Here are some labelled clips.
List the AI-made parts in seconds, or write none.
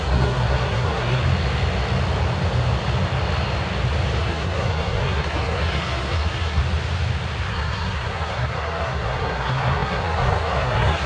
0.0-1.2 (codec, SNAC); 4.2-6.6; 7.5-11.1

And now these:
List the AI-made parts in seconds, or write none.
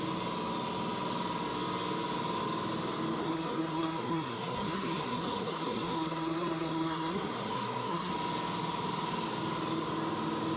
3.2-8.1 (codec, SNAC)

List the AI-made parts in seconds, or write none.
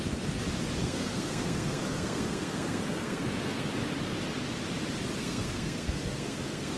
0.8-3.7 (codec, SNAC); 5.2-6.8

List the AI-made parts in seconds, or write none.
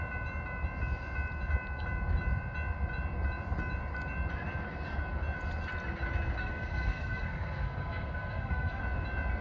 6.4-8.8 (codec, SNAC)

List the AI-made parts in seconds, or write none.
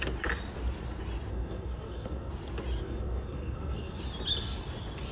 1.3-2.3 (codec, SNAC); 2.8-4.0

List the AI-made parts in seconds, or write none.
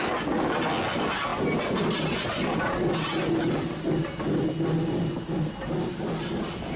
none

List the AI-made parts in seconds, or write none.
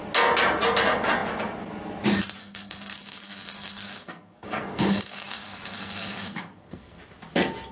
2.4-7.0 (codec, SNAC)